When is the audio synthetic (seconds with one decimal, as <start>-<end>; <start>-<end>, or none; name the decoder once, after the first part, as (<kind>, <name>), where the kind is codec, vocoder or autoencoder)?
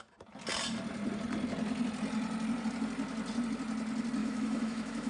4.2-5.1 (autoencoder, DAC-VAE)